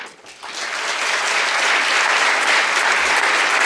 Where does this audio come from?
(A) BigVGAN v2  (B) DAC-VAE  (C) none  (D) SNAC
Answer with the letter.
C